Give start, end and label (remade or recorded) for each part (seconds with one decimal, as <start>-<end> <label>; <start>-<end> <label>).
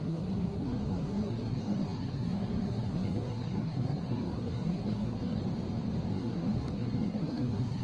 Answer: 0.0-5.4 remade; 5.4-6.1 recorded; 6.1-7.8 remade